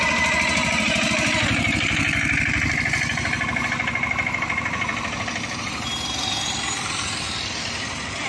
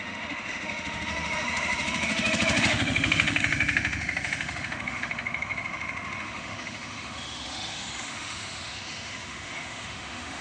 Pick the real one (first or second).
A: first